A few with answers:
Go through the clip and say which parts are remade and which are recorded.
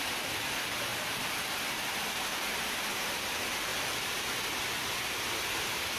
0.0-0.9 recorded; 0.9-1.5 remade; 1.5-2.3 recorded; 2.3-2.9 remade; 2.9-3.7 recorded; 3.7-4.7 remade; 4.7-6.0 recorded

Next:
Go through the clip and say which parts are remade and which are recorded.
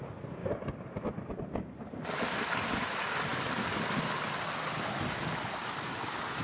0.0-0.4 recorded; 0.4-1.3 remade; 1.3-6.4 recorded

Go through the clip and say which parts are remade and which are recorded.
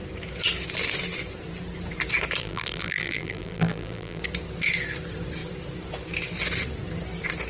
0.0-2.4 recorded; 2.4-4.2 remade; 4.2-7.5 recorded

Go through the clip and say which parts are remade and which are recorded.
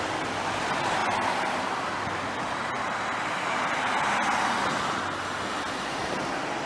0.0-6.7 recorded